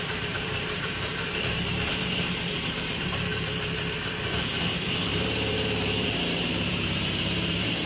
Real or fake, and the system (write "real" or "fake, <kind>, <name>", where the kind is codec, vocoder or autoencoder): fake, vocoder, BigVGAN v2